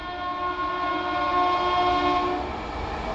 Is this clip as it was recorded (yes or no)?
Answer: yes